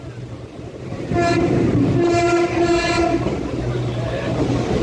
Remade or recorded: remade